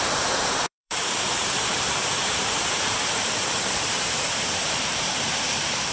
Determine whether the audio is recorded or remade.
remade